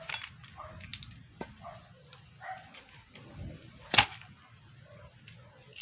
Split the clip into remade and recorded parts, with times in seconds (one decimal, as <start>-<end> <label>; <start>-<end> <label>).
0.0-5.8 recorded